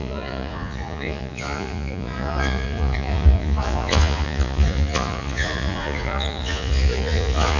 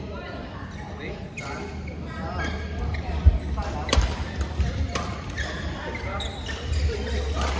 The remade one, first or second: first